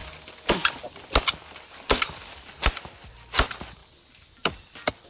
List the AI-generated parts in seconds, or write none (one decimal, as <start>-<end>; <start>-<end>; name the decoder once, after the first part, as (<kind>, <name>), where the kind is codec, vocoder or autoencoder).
none